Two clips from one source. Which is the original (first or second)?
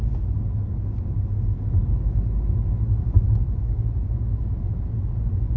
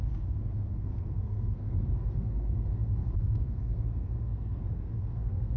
first